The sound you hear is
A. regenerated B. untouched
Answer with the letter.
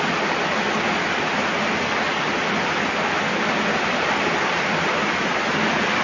B